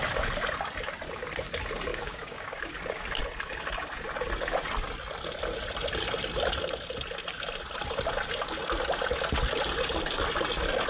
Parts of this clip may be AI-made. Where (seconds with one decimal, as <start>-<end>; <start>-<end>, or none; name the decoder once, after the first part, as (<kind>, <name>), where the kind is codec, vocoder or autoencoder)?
1.9-2.6 (codec, DAC)